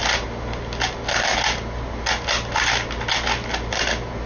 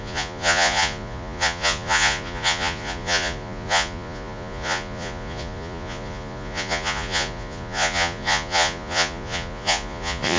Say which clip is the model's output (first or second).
second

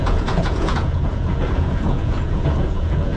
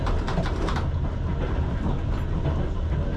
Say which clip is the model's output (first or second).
first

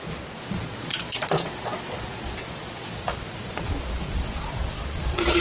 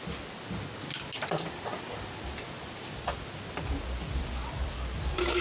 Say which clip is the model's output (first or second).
first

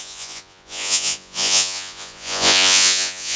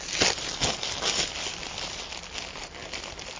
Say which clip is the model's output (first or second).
first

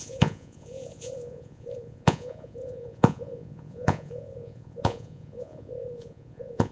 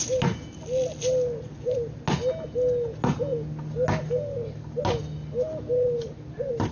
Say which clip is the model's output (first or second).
first